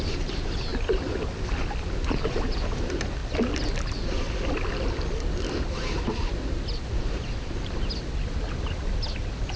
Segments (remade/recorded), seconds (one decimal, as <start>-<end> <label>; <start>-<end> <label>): 0.0-9.6 recorded